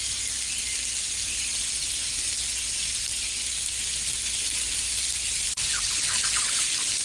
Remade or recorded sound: recorded